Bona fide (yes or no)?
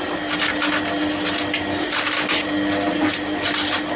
yes